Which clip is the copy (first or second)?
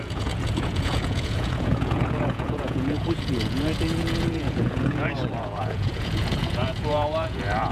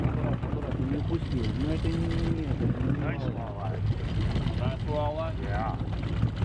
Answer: first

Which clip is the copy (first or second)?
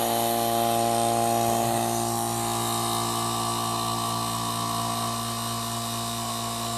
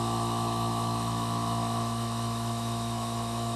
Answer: second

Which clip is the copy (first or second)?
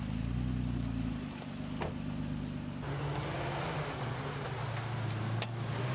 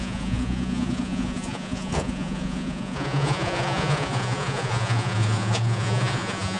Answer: second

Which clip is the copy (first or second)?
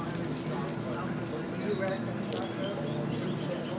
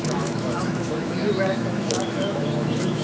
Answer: second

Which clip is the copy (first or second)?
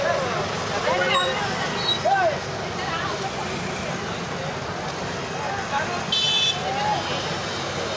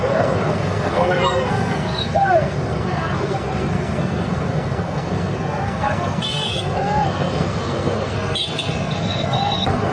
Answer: second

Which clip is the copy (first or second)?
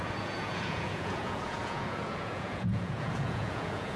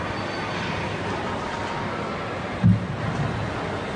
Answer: first